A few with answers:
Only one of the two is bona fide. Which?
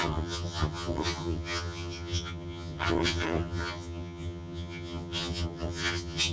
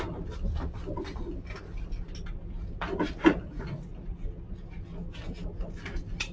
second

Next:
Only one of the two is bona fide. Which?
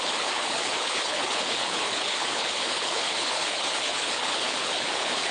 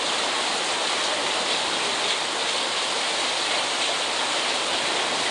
second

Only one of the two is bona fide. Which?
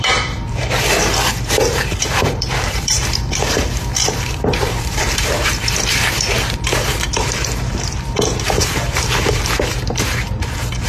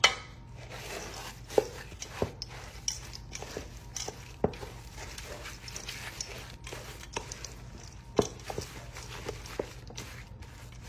second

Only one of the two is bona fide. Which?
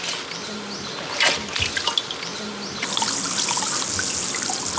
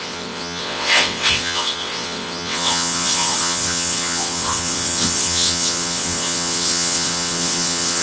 first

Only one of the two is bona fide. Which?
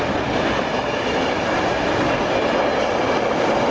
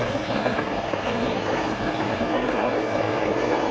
first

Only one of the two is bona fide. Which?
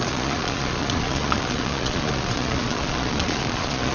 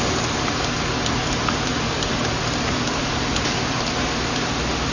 second